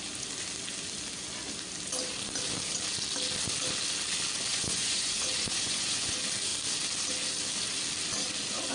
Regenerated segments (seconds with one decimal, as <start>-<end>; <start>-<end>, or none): 4.5-6.1